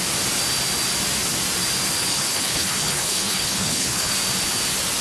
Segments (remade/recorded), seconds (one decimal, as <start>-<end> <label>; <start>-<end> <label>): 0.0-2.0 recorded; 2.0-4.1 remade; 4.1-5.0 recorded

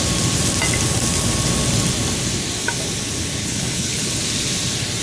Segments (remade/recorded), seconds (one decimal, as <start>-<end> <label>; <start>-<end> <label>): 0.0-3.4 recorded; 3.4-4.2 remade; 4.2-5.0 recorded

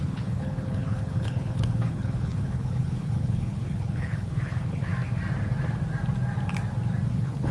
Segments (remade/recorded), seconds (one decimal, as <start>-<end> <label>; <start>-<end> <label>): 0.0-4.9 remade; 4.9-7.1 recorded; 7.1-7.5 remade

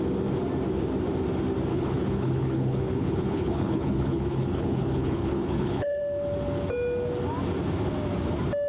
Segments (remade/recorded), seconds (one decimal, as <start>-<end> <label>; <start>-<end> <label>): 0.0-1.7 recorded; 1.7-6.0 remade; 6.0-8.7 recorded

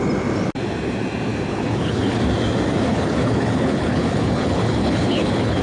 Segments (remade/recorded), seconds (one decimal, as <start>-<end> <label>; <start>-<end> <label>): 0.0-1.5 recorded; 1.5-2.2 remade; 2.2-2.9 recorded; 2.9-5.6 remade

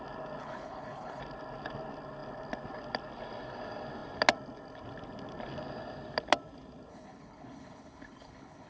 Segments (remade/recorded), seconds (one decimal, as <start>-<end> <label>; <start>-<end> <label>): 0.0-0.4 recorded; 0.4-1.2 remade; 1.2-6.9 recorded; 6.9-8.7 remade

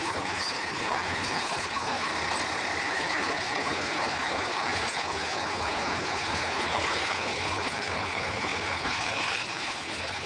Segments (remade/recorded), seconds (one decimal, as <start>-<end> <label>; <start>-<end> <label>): 0.0-2.1 remade; 2.1-2.8 recorded; 2.8-10.3 remade

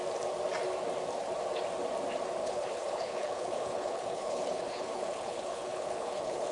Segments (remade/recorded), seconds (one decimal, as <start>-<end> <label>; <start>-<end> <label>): 0.0-2.4 recorded; 2.4-6.5 remade